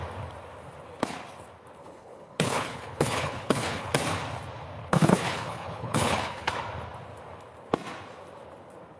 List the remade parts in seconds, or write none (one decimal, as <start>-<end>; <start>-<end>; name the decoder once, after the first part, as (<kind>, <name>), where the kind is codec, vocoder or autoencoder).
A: 1.8-3.9 (codec, HILCodec); 4.8-6.5